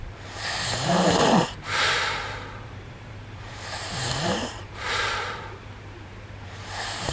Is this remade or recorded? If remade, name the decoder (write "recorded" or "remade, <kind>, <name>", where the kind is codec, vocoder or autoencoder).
remade, vocoder, BigVGAN v2